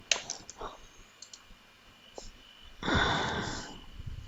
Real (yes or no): yes